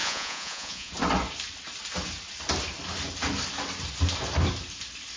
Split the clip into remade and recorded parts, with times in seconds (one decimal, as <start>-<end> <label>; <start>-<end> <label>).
0.0-0.9 remade; 0.9-5.2 recorded